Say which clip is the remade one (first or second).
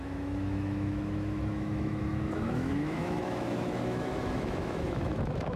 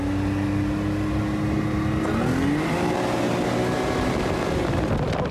first